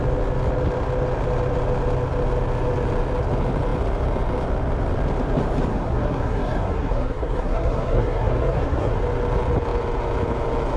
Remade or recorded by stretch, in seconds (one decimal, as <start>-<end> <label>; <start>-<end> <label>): 0.0-5.7 recorded; 5.7-9.0 remade; 9.0-10.8 recorded